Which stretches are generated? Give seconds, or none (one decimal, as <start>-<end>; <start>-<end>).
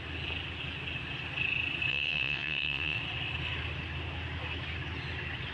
1.9-3.0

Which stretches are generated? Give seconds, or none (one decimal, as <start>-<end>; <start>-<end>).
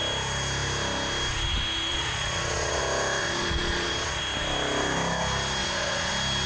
1.9-2.8; 3.2-4.2; 5.6-6.1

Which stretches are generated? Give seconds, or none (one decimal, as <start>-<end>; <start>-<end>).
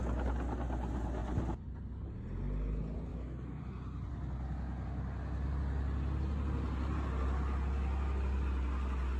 3.1-3.6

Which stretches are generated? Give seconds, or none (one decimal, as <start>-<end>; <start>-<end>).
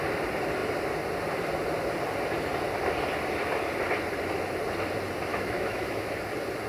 5.3-6.1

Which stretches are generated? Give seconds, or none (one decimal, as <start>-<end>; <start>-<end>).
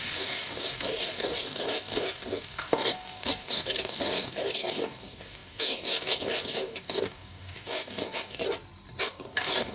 0.0-8.4; 9.0-9.7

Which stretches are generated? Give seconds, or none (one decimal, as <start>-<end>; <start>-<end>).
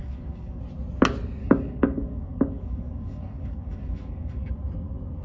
0.0-0.6; 1.4-4.5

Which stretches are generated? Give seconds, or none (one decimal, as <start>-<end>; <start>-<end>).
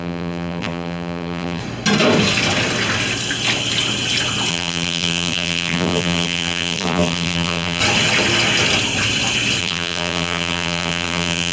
0.0-1.6; 4.5-7.8; 9.6-11.5